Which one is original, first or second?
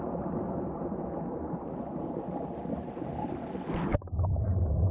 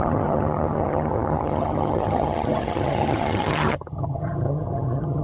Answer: first